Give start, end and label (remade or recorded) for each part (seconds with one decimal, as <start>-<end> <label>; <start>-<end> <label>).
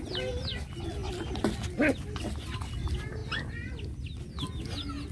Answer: 0.0-5.1 recorded